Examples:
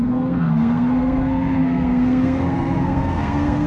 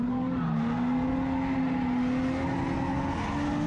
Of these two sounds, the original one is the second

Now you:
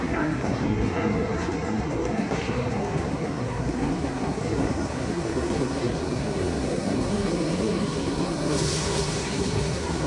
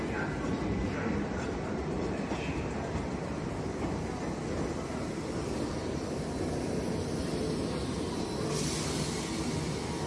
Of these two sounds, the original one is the second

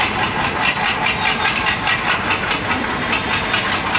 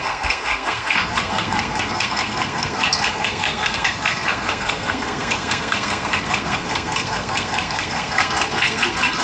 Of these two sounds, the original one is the first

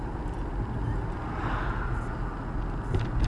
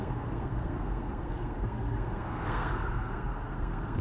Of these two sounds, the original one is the first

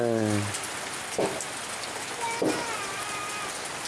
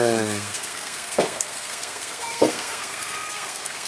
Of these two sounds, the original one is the first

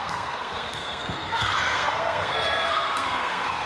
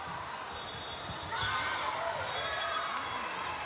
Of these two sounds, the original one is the second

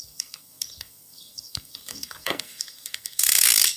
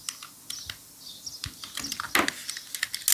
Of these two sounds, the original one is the second